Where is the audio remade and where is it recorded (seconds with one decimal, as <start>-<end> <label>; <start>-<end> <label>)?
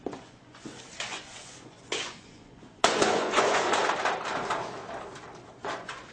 0.0-3.8 remade; 3.8-5.6 recorded; 5.6-6.1 remade